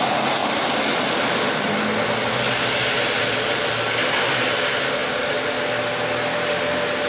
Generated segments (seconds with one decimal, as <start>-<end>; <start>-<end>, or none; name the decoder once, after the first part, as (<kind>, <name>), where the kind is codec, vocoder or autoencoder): none